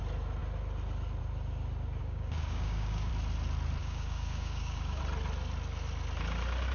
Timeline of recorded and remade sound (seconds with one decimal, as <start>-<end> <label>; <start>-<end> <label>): 0.0-2.0 recorded; 2.0-3.1 remade; 3.1-3.8 recorded; 3.8-5.0 remade; 5.0-6.7 recorded